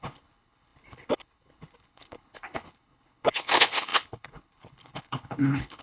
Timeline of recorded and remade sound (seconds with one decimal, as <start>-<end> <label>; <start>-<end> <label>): 0.0-5.8 remade

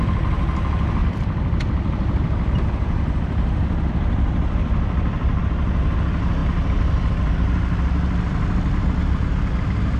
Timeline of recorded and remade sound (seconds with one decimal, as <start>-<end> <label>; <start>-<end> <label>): 0.0-1.0 recorded; 1.0-5.4 remade; 5.4-10.0 recorded

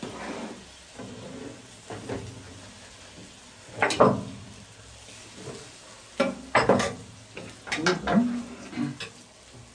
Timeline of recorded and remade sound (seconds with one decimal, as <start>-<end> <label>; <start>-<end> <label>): 0.0-9.7 recorded

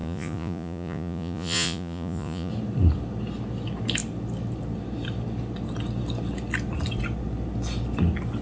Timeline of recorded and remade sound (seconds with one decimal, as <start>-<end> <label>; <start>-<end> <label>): 0.0-2.5 remade; 2.5-8.4 recorded

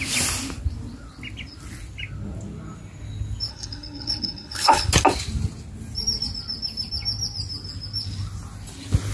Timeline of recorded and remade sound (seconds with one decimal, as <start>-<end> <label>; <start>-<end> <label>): 0.0-3.5 recorded; 3.5-4.9 remade; 4.9-9.1 recorded

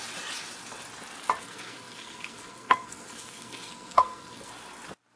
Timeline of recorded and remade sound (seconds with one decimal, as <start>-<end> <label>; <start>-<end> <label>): 0.0-1.4 recorded; 1.4-4.5 remade; 4.5-5.2 recorded

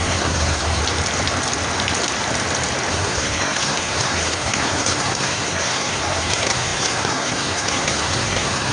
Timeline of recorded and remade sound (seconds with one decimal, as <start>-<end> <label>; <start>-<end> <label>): 0.0-0.8 remade; 0.8-2.9 recorded; 2.9-8.7 remade

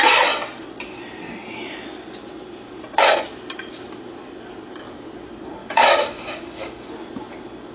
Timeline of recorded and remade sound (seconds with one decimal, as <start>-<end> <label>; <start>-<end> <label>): 0.0-5.6 recorded; 5.6-6.9 remade; 6.9-7.7 recorded